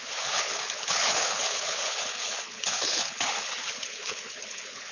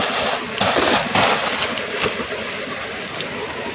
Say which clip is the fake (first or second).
first